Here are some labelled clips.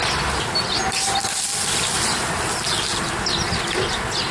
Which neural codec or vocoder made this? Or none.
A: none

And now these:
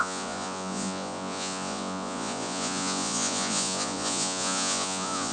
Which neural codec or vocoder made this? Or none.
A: vocoder, Vocos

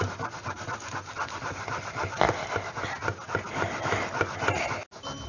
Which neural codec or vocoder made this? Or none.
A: none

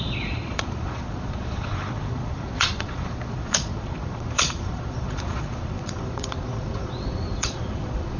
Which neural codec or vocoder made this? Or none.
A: vocoder, Vocos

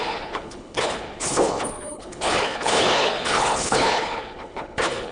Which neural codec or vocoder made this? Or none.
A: codec, HILCodec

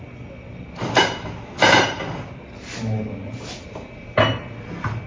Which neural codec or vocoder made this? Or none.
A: none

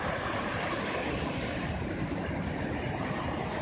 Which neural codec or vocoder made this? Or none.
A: none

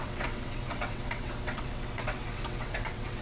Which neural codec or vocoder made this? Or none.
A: vocoder, WaveNeXt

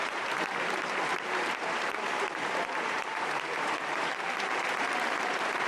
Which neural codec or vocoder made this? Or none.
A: vocoder, BigVGAN v2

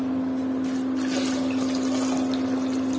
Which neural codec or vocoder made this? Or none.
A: none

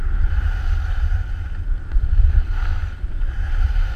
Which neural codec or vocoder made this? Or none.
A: none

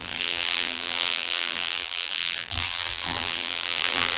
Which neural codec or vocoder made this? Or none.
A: vocoder, BigVGAN v2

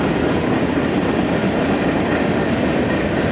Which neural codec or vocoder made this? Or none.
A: none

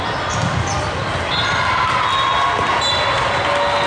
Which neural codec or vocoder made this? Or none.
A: none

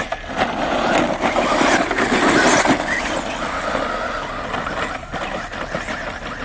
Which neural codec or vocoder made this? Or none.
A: none